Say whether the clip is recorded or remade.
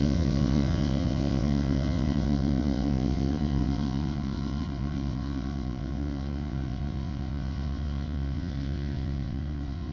remade